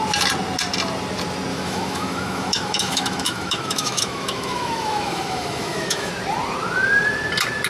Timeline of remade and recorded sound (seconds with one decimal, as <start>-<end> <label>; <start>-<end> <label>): 0.0-1.5 recorded; 1.5-6.1 remade; 6.1-7.7 recorded